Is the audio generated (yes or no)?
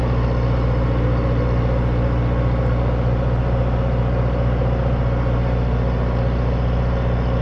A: no